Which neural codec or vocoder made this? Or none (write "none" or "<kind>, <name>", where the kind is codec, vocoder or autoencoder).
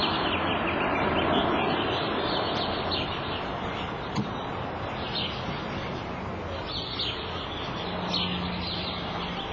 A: none